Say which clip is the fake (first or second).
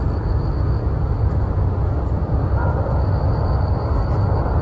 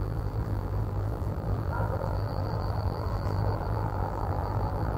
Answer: second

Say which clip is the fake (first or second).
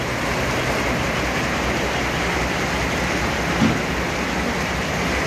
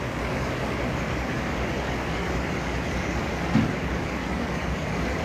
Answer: second